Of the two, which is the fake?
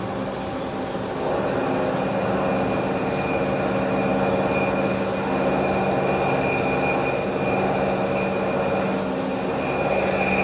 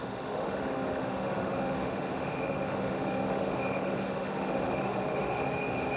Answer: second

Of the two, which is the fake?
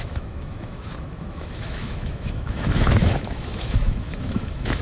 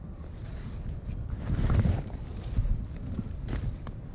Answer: first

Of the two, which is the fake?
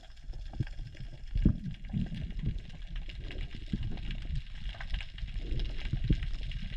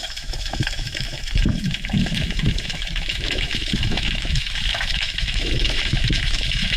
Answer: second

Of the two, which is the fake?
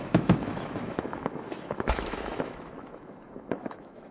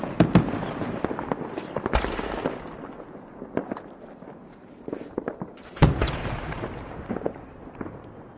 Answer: first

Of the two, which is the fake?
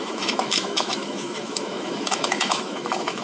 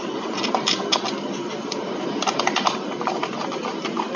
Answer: first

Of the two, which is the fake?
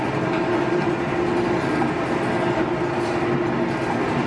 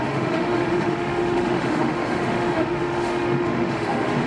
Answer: second